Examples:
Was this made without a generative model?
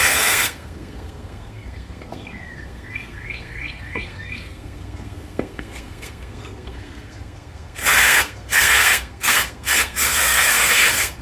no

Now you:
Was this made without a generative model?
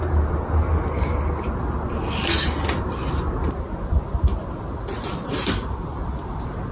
yes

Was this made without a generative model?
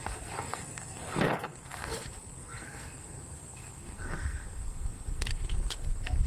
no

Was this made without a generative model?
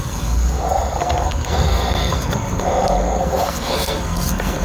no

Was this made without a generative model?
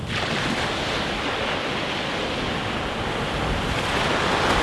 yes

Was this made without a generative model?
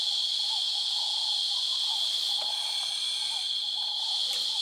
yes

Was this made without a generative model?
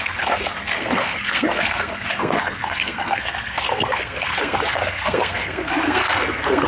no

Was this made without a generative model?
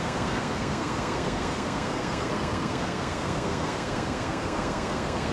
no